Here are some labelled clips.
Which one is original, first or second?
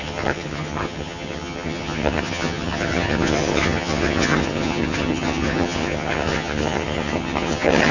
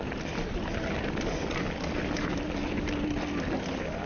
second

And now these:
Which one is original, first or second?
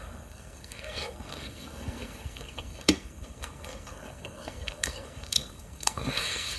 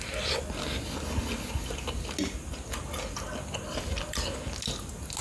second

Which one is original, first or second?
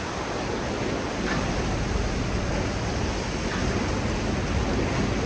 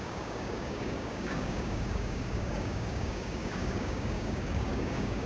first